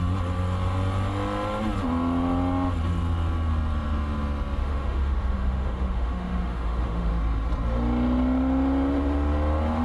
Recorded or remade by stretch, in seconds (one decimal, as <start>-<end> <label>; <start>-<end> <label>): 0.0-4.6 recorded; 4.6-7.1 remade; 7.1-9.8 recorded